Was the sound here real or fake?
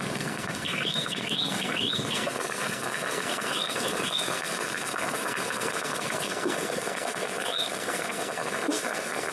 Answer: fake